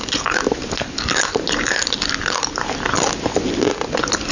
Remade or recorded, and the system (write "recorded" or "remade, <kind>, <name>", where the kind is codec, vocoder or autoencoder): recorded